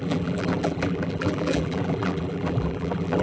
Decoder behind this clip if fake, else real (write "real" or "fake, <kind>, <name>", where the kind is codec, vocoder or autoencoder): fake, vocoder, BigVGAN v2